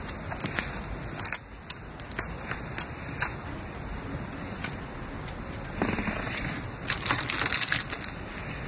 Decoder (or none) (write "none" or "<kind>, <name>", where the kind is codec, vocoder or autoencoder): none